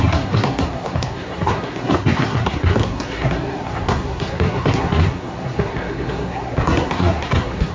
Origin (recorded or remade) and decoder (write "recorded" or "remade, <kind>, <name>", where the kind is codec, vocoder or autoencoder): remade, codec, SNAC